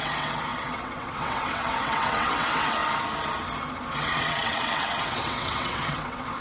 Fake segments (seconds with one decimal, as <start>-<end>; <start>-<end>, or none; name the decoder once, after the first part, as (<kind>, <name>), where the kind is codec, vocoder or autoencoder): 0.0-2.8 (vocoder, WaveNeXt); 3.9-6.4